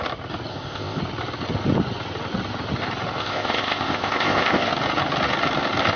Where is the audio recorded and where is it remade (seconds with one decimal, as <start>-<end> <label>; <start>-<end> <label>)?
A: 0.0-0.5 recorded; 0.5-1.0 remade; 1.0-3.2 recorded; 3.2-4.7 remade; 4.7-6.0 recorded